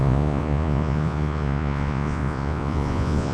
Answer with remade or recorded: remade